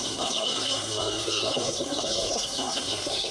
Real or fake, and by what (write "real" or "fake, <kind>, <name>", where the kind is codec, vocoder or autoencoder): fake, codec, SNAC